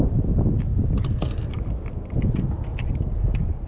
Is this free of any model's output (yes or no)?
yes